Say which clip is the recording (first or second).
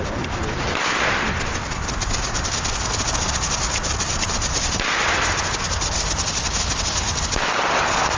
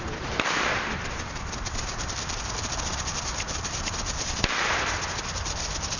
first